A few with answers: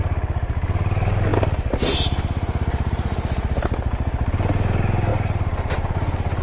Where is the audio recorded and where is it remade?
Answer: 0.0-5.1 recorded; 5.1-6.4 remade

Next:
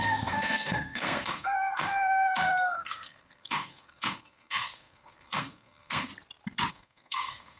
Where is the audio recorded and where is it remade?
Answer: 0.0-6.1 remade; 6.1-6.7 recorded; 6.7-7.6 remade

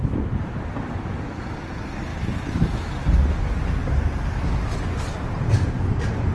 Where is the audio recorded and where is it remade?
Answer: 0.0-2.1 recorded; 2.1-2.9 remade; 2.9-6.3 recorded

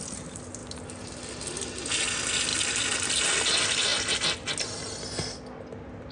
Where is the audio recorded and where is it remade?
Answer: 0.0-6.1 recorded

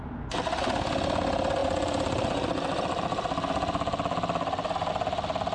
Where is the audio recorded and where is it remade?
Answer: 0.0-5.5 recorded

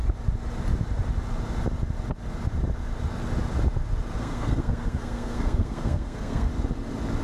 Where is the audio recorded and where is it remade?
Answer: 0.0-4.2 recorded; 4.2-6.5 remade; 6.5-7.2 recorded